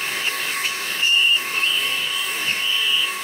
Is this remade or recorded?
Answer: remade